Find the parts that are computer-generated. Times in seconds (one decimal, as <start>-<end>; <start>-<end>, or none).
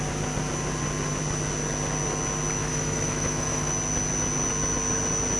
2.6-3.7